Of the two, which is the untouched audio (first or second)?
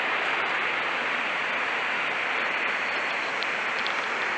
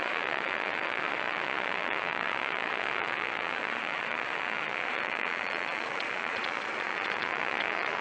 first